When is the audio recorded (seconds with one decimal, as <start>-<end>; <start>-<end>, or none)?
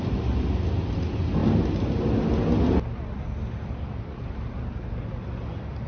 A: 0.0-1.4; 2.0-5.9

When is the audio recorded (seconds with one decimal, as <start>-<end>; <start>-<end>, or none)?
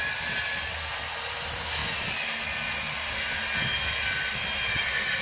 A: 0.0-5.2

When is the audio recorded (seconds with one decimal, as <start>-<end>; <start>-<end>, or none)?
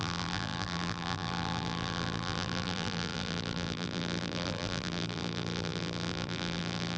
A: none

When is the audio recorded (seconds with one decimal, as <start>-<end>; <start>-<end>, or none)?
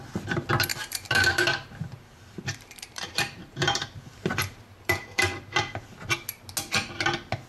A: 0.0-0.7; 5.2-7.5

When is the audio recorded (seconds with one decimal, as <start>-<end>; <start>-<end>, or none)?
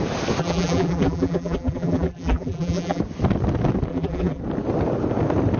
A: 0.0-0.4; 3.0-3.9; 4.4-5.6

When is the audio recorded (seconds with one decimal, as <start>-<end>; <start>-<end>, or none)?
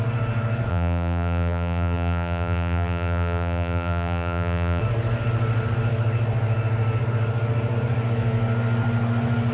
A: 0.0-0.7; 4.8-9.5